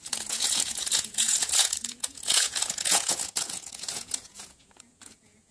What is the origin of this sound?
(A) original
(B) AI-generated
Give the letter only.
B